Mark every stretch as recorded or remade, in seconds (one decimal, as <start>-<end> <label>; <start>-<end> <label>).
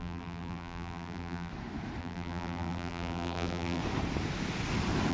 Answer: 0.0-1.5 remade; 1.5-2.0 recorded; 2.0-3.8 remade; 3.8-5.1 recorded